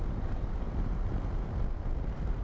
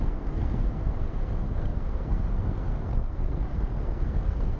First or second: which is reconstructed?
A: second